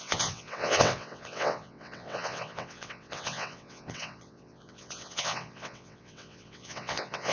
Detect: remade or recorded remade